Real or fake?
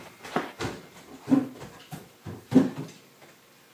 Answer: real